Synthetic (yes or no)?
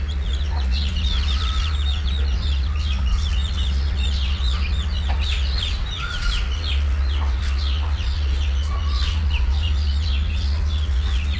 yes